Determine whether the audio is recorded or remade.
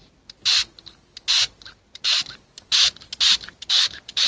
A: recorded